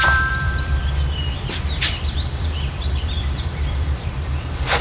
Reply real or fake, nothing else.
fake